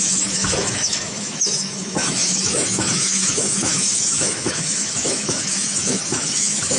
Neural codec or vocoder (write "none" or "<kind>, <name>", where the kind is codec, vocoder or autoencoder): autoencoder, DAC-VAE